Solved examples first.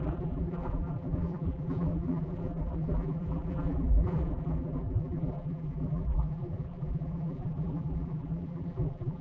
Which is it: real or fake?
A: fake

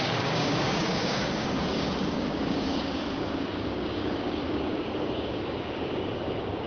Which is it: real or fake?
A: fake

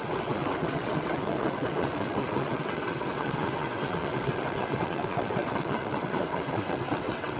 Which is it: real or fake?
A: fake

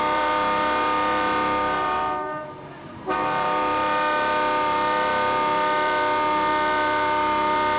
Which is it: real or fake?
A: fake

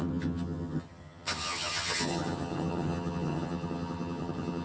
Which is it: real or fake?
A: fake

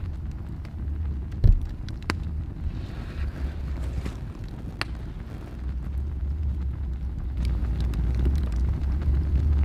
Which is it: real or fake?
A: real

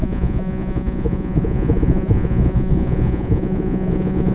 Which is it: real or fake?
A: fake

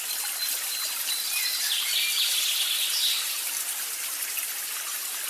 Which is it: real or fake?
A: real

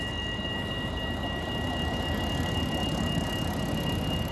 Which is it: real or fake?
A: real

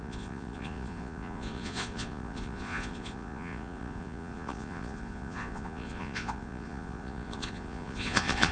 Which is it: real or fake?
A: fake